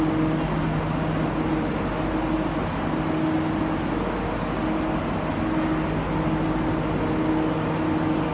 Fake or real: real